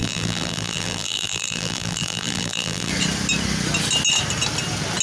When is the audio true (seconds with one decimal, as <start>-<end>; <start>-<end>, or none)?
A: 2.9-5.0